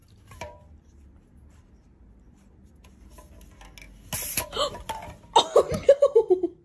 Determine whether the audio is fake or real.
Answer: real